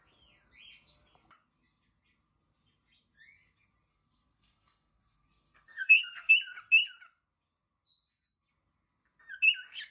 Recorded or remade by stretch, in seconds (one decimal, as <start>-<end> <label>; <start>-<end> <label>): 0.0-3.9 recorded; 3.9-6.3 remade; 6.3-9.9 recorded

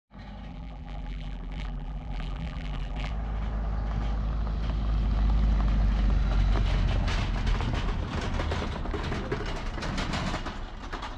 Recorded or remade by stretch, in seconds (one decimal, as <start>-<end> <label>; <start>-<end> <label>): 0.0-0.5 recorded; 0.5-3.1 remade; 3.1-11.2 recorded

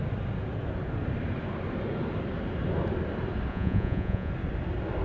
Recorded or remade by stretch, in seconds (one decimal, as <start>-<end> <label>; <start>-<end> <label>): 0.0-3.5 recorded; 3.5-4.3 remade; 4.3-5.0 recorded

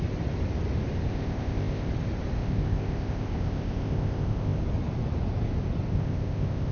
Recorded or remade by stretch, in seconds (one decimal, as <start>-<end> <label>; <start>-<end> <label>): 0.0-1.1 recorded; 1.1-1.9 remade; 1.9-2.4 recorded; 2.4-4.6 remade; 4.6-5.9 recorded; 5.9-6.7 remade

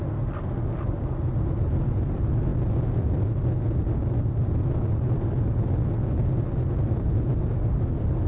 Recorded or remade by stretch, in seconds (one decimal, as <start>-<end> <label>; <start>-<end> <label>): 0.0-8.3 recorded